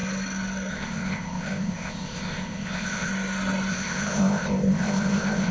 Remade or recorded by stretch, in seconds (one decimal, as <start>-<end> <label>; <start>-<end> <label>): 0.0-0.7 recorded; 0.7-3.1 remade; 3.1-3.7 recorded; 3.7-5.5 remade